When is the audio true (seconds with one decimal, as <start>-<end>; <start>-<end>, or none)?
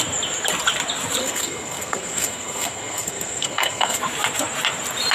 0.0-1.2; 4.0-5.1